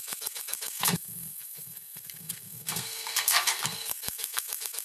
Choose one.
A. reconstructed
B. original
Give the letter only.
A